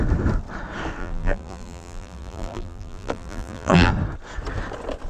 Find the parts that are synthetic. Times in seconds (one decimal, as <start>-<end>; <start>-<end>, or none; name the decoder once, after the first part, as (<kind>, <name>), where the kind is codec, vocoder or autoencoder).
1.0-3.9 (vocoder, BigVGAN v2)